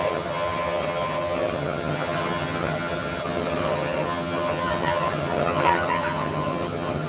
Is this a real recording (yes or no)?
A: no